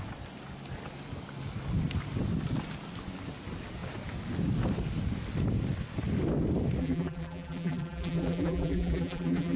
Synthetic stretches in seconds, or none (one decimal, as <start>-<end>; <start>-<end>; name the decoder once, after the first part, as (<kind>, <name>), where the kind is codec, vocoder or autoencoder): 6.8-9.6 (vocoder, BigVGAN v2)